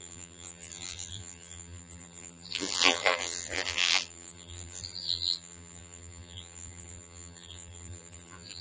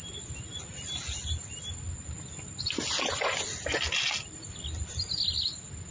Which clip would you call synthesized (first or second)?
first